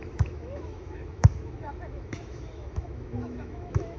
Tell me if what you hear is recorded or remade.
remade